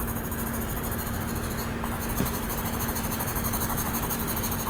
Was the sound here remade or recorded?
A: remade